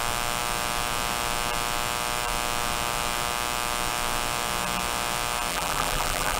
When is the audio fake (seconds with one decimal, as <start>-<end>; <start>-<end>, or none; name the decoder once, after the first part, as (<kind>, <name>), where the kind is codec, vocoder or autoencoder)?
5.5-6.4 (vocoder, BigVGAN v2)